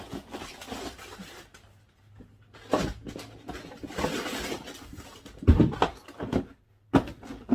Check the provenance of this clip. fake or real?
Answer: real